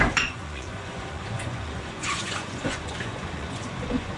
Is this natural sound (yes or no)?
no